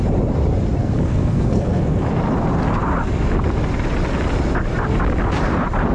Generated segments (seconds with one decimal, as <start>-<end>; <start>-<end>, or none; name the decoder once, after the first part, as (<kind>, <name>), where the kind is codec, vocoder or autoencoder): 0.8-2.0 (codec, SNAC)